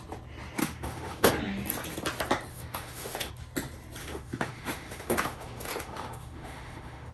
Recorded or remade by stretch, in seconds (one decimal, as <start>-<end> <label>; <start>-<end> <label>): 0.0-0.6 recorded; 0.6-1.3 remade; 1.3-2.5 recorded; 2.5-3.3 remade; 3.3-4.0 recorded; 4.0-7.1 remade